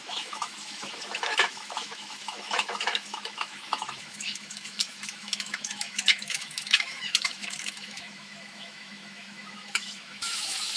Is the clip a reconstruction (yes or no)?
yes